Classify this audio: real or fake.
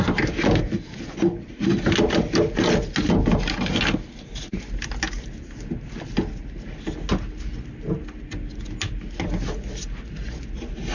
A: real